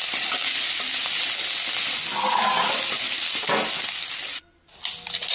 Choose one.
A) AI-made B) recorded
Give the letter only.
B